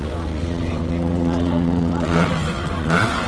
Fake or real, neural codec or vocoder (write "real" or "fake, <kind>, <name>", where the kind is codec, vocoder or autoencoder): fake, vocoder, WaveNeXt